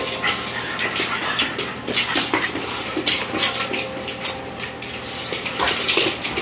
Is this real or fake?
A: real